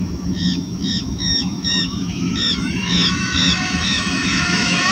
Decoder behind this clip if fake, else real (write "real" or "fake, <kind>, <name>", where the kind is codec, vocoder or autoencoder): fake, autoencoder, DAC-VAE